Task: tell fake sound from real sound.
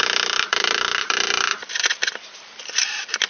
fake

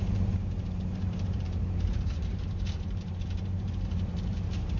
fake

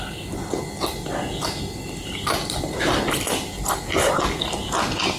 real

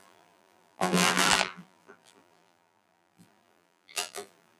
fake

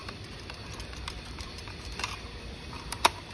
fake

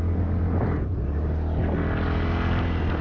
real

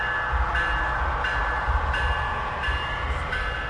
real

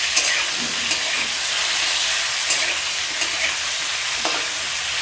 real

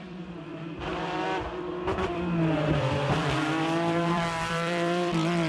fake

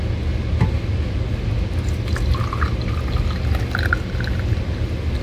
real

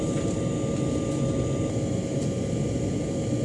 real